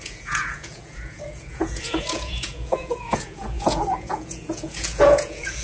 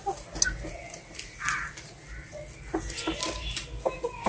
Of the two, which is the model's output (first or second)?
first